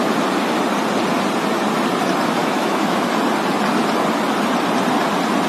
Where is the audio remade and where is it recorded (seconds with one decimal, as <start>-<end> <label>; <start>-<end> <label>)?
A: 0.0-2.4 recorded; 2.4-3.1 remade; 3.1-5.5 recorded